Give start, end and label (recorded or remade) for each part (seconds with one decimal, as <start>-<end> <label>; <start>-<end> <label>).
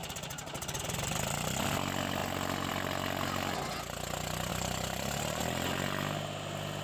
0.0-0.8 remade; 0.8-4.5 recorded; 4.5-5.4 remade; 5.4-6.8 recorded